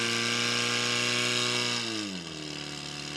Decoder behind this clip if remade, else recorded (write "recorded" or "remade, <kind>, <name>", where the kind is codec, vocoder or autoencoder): recorded